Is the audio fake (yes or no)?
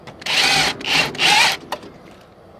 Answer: no